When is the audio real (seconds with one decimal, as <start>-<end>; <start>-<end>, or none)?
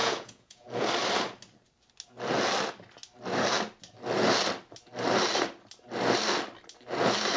0.9-7.4